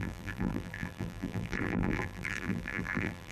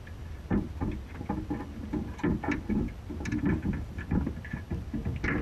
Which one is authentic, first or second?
second